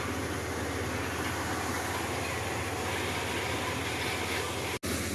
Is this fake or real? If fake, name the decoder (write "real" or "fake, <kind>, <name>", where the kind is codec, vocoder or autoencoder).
real